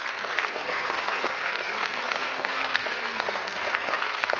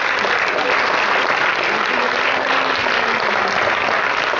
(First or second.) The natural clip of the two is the second